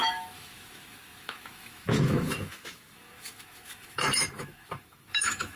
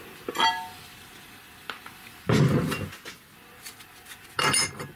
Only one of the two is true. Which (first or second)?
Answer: second